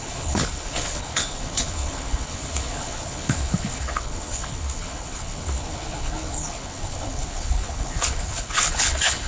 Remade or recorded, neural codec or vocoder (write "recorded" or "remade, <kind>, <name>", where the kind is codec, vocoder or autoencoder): remade, codec, HILCodec